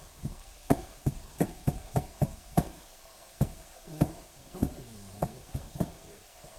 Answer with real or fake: fake